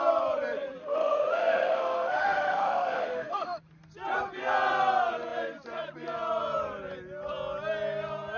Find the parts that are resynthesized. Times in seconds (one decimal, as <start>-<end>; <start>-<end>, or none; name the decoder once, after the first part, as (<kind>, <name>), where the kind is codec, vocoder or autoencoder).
0.8-3.6 (autoencoder, DAC-VAE)